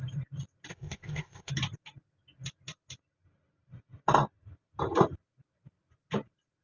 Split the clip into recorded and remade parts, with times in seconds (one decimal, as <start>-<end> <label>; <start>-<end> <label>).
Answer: 0.0-0.7 recorded; 0.7-1.5 remade; 1.5-6.6 recorded